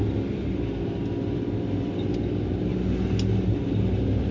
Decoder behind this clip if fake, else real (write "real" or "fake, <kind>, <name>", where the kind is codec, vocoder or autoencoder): real